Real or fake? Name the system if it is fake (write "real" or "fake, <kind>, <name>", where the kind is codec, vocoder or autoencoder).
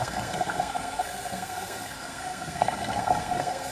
fake, codec, SNAC